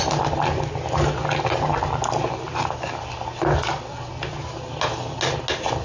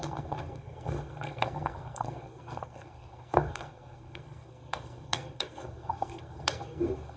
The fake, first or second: second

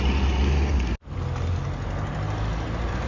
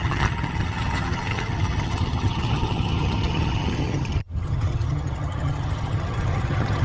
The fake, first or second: second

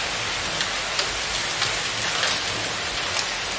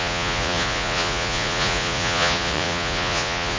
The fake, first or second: second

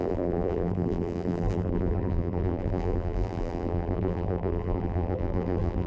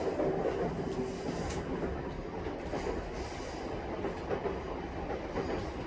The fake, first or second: first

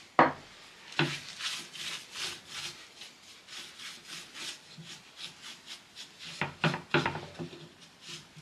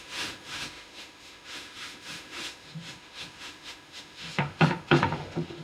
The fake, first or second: second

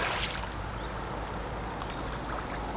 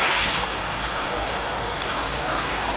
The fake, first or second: second